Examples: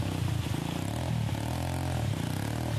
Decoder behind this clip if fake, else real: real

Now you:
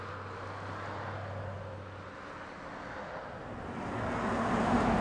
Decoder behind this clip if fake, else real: real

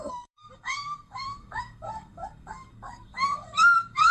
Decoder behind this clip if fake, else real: fake, codec, SNAC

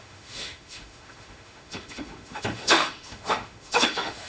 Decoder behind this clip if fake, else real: fake, autoencoder, DAC-VAE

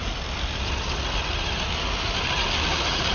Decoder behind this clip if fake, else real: real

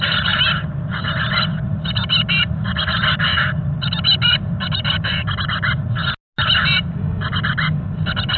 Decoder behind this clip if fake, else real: real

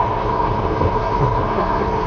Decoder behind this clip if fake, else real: fake, codec, SNAC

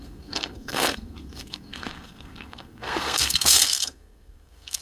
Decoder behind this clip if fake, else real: fake, codec, SNAC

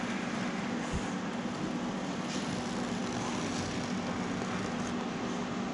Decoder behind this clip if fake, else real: real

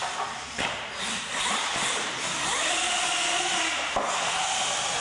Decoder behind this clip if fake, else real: real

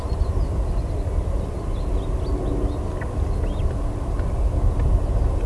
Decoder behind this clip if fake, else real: real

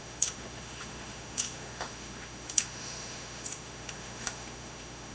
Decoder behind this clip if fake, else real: fake, autoencoder, DAC-VAE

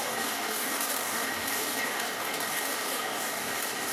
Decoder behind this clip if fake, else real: fake, codec, DAC